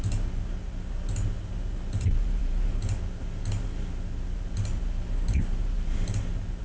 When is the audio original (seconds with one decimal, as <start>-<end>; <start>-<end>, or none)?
0.0-6.6